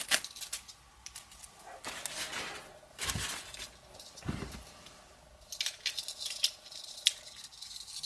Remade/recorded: recorded